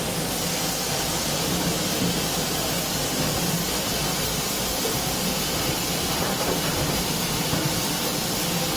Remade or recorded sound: recorded